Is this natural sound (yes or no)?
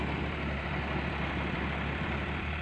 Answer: no